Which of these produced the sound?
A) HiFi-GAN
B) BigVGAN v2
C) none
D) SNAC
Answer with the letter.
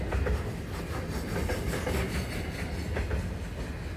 C